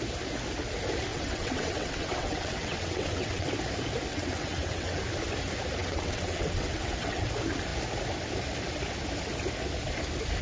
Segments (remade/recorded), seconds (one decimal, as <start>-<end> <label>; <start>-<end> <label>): 0.0-1.1 recorded; 1.1-3.5 remade; 3.5-4.1 recorded; 4.1-5.0 remade; 5.0-5.8 recorded; 5.8-7.3 remade; 7.3-10.4 recorded